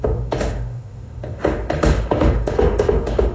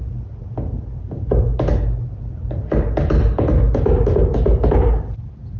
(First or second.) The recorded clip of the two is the second